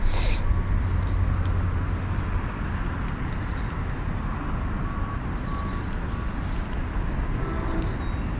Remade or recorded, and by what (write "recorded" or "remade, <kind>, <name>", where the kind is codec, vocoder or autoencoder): recorded